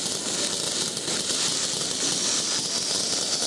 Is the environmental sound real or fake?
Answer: real